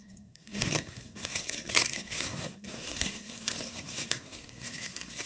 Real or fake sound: fake